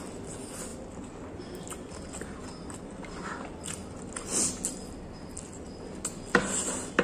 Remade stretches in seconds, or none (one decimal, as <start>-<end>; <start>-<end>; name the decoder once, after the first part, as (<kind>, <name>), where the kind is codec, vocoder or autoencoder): none